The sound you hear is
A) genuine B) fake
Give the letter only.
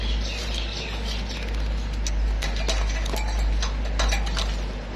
A